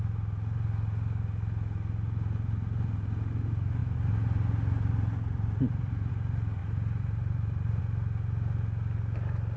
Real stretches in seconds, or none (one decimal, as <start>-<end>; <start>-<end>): 0.0-3.8; 6.1-6.6; 7.8-9.6